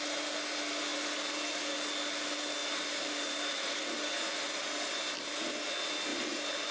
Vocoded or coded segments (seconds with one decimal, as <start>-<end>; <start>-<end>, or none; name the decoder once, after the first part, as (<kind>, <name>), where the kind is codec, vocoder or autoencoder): 2.6-3.8 (vocoder, BigVGAN v2); 6.1-6.7

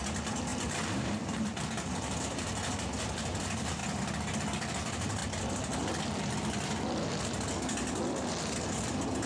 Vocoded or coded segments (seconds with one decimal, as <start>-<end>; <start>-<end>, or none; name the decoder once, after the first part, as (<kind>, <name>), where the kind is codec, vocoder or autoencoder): 0.0-3.8 (vocoder, BigVGAN v2); 4.8-5.2; 8.9-9.3

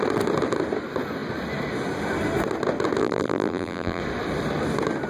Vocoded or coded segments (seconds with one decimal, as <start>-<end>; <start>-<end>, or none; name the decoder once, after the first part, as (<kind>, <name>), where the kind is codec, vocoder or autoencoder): 3.0-4.0 (vocoder, BigVGAN v2)

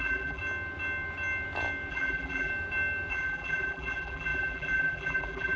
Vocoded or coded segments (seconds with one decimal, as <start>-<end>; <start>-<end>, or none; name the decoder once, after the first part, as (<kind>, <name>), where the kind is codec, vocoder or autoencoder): 0.0-0.4 (vocoder, BigVGAN v2); 1.9-2.5; 3.1-5.6

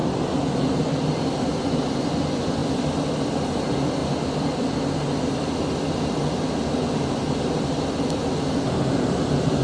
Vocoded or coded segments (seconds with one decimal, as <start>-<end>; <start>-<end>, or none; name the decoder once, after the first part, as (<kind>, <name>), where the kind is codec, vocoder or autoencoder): none

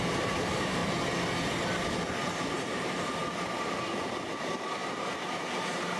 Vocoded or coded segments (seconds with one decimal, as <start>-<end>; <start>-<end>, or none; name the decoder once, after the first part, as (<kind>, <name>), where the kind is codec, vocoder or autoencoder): 0.0-0.8 (vocoder, BigVGAN v2); 2.5-6.0

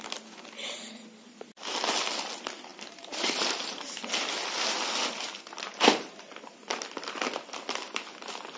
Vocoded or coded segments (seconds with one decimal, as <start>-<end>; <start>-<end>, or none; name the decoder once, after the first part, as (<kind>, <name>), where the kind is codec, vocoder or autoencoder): 2.7-4.0 (vocoder, BigVGAN v2)